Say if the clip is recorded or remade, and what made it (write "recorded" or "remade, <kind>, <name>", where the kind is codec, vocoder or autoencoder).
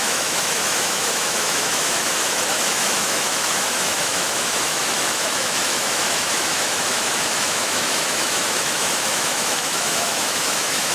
remade, autoencoder, DAC-VAE